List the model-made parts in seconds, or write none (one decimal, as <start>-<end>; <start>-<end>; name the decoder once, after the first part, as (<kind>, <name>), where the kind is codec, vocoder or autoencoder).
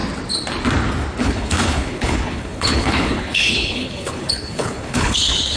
1.2-5.6 (codec, HILCodec)